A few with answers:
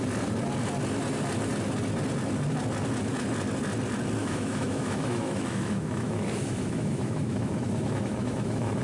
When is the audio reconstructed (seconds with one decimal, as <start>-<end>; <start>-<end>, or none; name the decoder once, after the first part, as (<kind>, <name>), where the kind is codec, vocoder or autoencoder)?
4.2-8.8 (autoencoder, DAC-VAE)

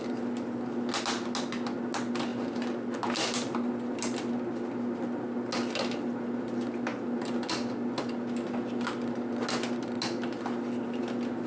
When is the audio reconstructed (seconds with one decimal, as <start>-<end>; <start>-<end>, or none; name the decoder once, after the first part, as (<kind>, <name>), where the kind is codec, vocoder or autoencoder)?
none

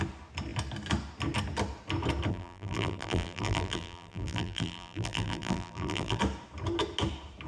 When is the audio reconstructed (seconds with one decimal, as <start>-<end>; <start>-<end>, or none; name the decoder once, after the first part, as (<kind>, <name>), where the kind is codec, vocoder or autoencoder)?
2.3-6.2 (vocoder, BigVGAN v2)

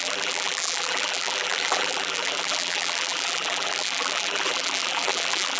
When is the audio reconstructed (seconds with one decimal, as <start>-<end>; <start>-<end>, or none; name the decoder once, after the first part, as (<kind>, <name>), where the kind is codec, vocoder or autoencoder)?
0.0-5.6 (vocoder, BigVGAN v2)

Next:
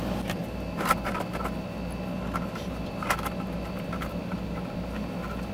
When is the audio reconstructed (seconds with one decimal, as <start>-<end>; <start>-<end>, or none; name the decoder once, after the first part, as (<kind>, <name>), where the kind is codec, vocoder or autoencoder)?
none

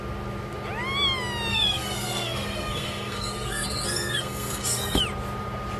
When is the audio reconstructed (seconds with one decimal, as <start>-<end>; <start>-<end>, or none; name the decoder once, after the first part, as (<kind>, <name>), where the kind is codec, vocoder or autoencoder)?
1.5-5.0 (codec, SNAC)

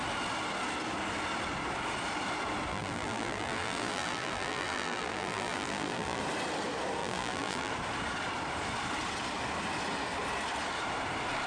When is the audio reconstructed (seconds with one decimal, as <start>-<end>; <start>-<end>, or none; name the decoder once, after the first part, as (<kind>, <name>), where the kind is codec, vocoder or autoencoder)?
2.7-6.2 (vocoder, BigVGAN v2); 7.0-7.7